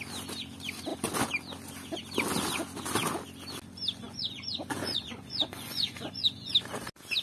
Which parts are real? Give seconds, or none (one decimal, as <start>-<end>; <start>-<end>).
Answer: 0.0-4.0; 6.5-7.2